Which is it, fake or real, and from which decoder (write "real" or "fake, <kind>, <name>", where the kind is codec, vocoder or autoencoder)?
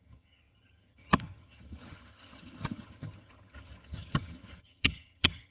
fake, vocoder, HiFi-GAN